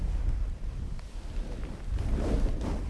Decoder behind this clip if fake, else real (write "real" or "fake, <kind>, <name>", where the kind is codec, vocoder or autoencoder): real